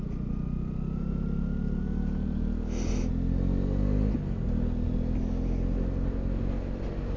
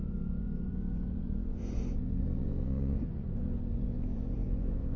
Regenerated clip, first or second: second